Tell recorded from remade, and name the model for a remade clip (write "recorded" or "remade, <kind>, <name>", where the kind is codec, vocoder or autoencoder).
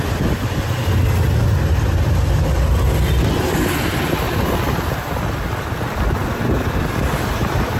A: recorded